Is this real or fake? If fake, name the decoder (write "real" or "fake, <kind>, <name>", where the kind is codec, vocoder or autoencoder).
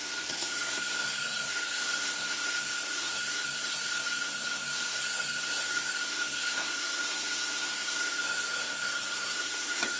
fake, codec, SNAC